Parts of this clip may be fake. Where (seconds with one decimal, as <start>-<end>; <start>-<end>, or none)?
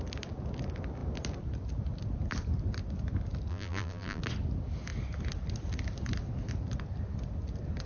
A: 3.5-4.2